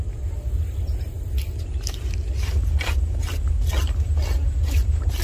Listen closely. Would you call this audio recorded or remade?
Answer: recorded